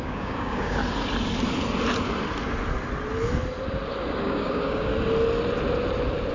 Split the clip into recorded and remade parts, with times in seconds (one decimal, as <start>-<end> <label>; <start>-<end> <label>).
0.0-0.8 remade; 0.8-4.2 recorded; 4.2-4.9 remade; 4.9-6.3 recorded